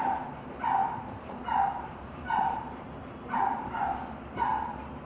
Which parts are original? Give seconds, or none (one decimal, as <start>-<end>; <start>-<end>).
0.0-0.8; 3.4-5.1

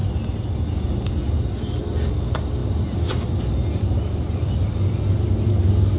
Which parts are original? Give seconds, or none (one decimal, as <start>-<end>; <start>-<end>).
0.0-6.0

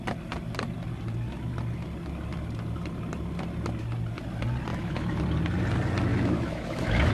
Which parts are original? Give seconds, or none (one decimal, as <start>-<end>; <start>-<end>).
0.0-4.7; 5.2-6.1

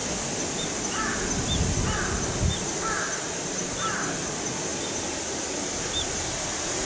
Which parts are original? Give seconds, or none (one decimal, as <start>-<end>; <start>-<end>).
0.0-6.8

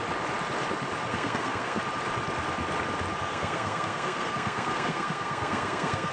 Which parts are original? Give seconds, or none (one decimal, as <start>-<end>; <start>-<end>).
0.0-1.1; 1.8-3.2

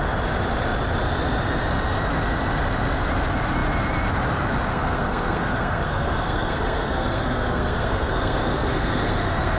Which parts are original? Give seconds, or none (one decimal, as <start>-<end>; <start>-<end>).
0.0-4.7